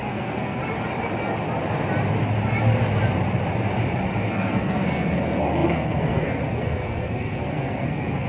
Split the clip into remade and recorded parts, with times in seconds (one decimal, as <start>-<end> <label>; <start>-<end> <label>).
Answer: 0.0-0.6 remade; 0.6-4.3 recorded; 4.3-8.3 remade